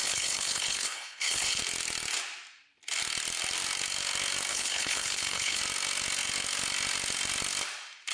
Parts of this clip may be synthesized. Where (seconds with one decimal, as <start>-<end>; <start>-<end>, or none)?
0.0-1.6; 4.5-5.6